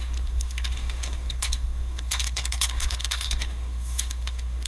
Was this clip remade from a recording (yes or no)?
yes